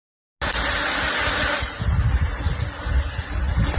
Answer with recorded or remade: recorded